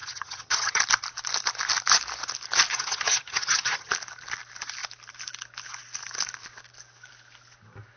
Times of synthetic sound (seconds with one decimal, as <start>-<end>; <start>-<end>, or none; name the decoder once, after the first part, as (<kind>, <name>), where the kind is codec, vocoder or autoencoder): 0.0-0.8 (vocoder, HiFi-GAN); 2.7-3.9